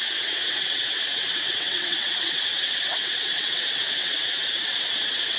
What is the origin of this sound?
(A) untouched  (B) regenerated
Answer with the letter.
B